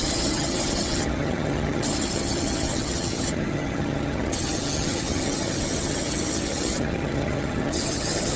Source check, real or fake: fake